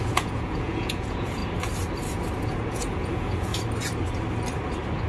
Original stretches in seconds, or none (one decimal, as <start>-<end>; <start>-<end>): 1.4-2.4; 3.5-5.1